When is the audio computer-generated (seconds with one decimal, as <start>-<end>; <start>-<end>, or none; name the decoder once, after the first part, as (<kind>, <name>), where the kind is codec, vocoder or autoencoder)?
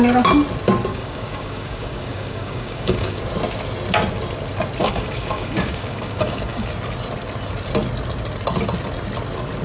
0.9-3.2 (codec, DAC); 4.8-6.7